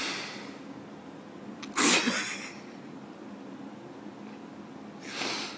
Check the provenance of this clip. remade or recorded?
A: recorded